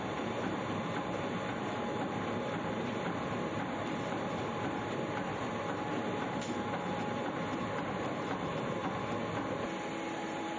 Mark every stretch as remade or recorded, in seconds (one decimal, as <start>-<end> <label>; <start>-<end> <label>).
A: 0.0-8.8 remade; 8.8-10.1 recorded; 10.1-10.6 remade